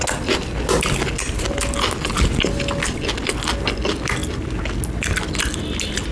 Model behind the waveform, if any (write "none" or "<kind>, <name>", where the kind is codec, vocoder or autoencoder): none